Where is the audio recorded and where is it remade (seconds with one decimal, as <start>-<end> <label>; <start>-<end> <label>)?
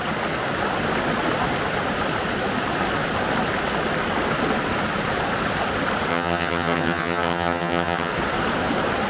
0.0-6.1 recorded; 6.1-8.1 remade; 8.1-9.1 recorded